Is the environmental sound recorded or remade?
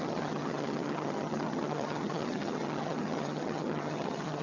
remade